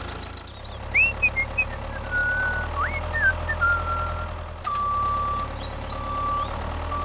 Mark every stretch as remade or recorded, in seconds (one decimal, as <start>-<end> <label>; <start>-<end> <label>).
0.0-7.0 recorded